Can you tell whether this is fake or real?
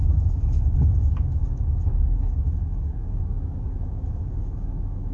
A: fake